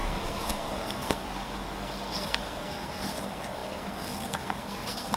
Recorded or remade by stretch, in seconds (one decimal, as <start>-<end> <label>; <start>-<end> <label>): 0.0-5.2 remade